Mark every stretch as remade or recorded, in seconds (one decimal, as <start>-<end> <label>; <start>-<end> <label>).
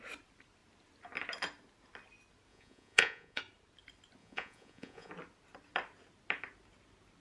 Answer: 0.0-2.5 recorded; 2.5-3.4 remade; 3.4-4.2 recorded; 4.2-5.1 remade; 5.1-7.2 recorded